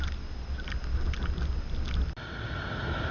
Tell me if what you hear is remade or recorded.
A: recorded